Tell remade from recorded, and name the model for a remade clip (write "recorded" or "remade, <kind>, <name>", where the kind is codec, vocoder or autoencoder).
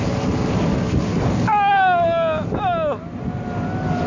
recorded